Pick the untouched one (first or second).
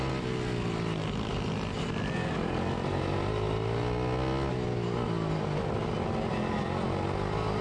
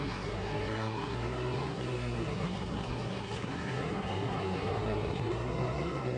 first